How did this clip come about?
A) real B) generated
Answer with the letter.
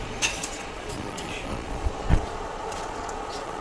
B